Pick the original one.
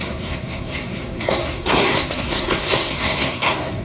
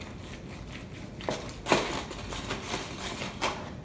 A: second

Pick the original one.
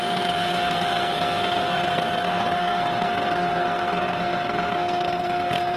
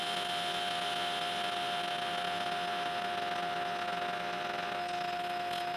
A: second